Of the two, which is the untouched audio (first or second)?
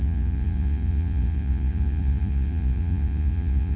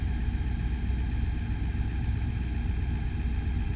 second